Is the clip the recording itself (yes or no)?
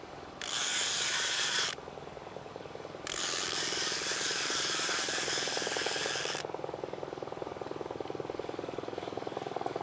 no